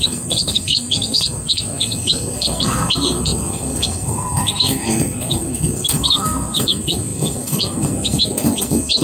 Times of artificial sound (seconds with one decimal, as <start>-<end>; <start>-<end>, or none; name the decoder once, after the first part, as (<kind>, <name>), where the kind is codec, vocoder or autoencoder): 0.0-9.0 (codec, SNAC)